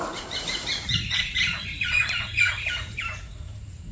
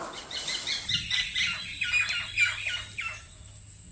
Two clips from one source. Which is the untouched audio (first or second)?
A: second